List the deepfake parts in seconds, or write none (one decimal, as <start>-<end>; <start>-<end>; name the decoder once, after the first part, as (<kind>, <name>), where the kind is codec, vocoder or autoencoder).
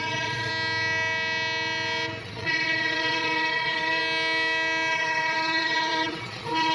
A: 0.0-0.5 (vocoder, Vocos); 2.2-4.0; 4.9-6.7